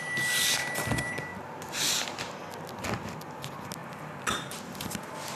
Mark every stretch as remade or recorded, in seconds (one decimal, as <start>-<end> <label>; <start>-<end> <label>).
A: 0.0-5.4 recorded